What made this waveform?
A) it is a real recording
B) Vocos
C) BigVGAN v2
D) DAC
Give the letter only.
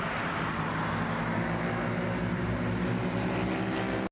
A